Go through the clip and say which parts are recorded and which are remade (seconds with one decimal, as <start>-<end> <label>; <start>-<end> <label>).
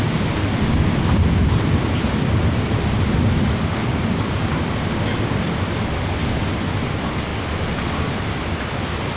0.0-1.4 recorded; 1.4-4.6 remade; 4.6-9.2 recorded